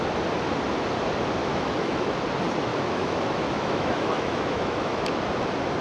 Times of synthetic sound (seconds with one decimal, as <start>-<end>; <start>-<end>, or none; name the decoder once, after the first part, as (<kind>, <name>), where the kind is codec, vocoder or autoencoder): 1.4-2.2 (autoencoder, DAC-VAE); 2.7-5.0